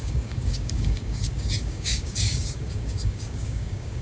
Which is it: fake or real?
fake